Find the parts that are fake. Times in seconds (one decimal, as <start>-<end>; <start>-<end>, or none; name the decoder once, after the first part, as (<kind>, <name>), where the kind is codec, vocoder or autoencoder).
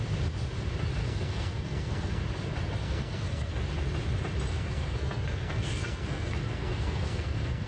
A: 1.0-2.2 (codec, SNAC); 2.8-3.5; 4.5-7.7